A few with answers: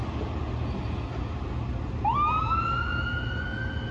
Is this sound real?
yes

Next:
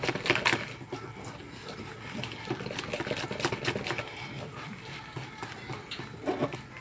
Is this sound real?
yes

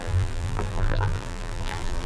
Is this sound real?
no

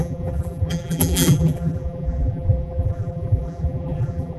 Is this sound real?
no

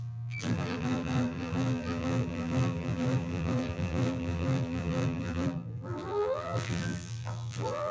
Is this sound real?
no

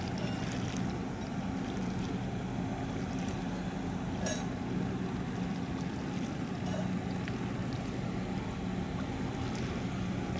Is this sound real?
yes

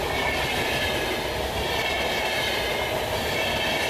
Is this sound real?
yes